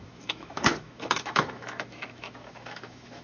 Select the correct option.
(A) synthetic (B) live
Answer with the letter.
A